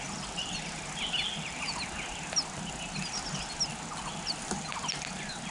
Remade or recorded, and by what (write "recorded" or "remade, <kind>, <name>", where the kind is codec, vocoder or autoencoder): recorded